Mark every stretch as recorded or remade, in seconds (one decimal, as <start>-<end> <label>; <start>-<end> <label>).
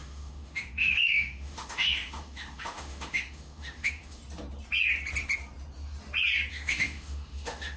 0.0-4.2 remade; 4.2-6.5 recorded; 6.5-7.8 remade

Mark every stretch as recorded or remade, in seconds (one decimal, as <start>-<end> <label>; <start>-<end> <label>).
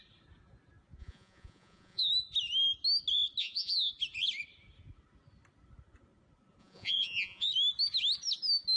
0.0-1.0 recorded; 1.0-2.1 remade; 2.1-3.4 recorded; 3.4-3.9 remade; 3.9-6.6 recorded; 6.6-7.5 remade; 7.5-8.8 recorded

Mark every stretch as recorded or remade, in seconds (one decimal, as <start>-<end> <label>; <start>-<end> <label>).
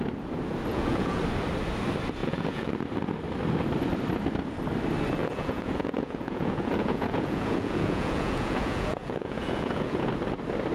0.0-0.7 recorded; 0.7-1.2 remade; 1.2-2.2 recorded; 2.2-2.7 remade; 2.7-5.2 recorded; 5.2-10.1 remade; 10.1-10.7 recorded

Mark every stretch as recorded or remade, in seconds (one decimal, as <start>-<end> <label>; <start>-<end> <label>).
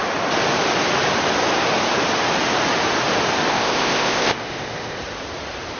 0.0-3.5 recorded; 3.5-5.0 remade; 5.0-5.8 recorded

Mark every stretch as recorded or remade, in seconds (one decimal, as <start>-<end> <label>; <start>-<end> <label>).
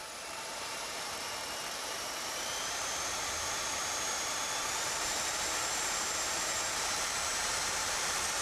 0.0-8.4 remade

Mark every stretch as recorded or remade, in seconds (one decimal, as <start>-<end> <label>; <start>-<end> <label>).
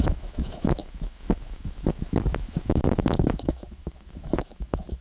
0.0-5.0 remade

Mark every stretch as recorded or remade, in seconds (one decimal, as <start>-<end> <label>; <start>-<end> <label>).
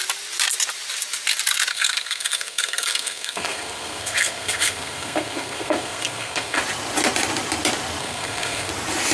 0.0-1.7 recorded; 1.7-6.6 remade; 6.6-8.0 recorded; 8.0-8.7 remade; 8.7-9.1 recorded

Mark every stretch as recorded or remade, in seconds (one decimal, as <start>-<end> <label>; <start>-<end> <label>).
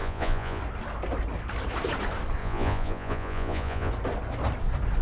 0.0-0.6 remade; 0.6-2.4 recorded; 2.4-3.9 remade; 3.9-5.0 recorded